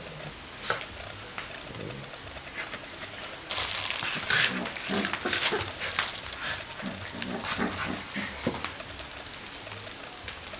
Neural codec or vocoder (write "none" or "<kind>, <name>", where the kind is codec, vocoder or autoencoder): none